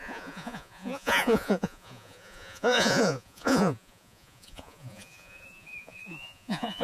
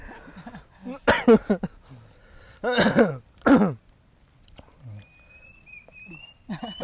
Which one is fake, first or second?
first